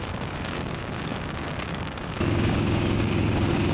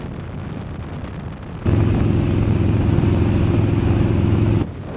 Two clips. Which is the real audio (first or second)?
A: second